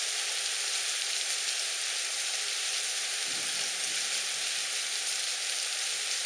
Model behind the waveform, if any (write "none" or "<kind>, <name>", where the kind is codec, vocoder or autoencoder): none